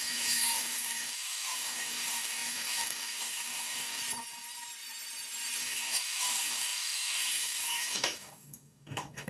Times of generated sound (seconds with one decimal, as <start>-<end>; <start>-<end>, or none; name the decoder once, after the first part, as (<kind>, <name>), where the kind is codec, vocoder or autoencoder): 0.0-4.0 (codec, DAC); 5.6-9.3